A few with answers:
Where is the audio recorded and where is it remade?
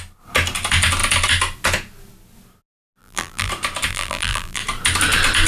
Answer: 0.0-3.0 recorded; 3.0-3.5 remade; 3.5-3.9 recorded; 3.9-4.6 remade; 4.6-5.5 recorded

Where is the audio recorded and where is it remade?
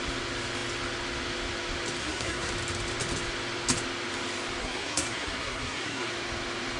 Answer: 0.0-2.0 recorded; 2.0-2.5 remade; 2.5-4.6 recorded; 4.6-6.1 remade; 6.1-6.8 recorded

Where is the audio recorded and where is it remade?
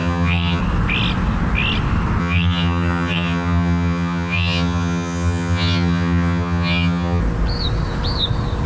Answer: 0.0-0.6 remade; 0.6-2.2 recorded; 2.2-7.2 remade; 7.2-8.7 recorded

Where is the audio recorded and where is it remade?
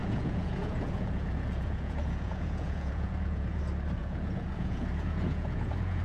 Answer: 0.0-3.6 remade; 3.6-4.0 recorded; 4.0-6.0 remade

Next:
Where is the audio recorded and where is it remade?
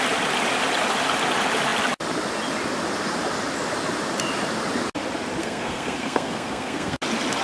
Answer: 0.0-5.4 recorded; 5.4-7.0 remade; 7.0-7.4 recorded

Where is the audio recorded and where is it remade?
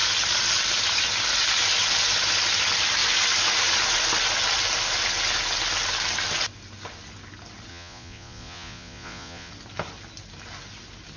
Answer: 0.0-7.7 recorded; 7.7-9.5 remade; 9.5-11.2 recorded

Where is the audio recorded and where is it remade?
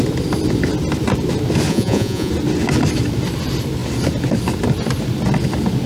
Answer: 0.0-1.7 recorded; 1.7-2.3 remade; 2.3-5.9 recorded